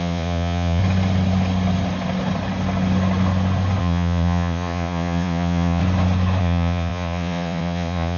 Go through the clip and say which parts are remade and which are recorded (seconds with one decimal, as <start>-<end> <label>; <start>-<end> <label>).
0.0-0.8 remade; 0.8-3.8 recorded; 3.8-5.8 remade; 5.8-6.4 recorded; 6.4-8.2 remade